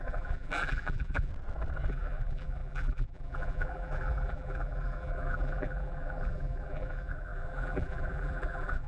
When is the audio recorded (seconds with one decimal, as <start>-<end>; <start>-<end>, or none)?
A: 1.3-1.9